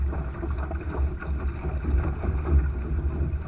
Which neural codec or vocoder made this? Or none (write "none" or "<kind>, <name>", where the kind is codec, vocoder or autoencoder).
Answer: none